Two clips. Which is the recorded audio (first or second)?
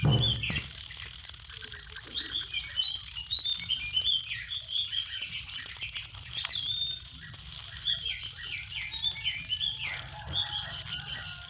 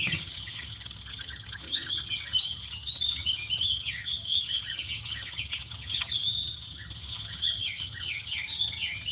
first